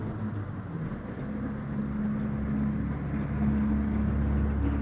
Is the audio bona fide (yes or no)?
yes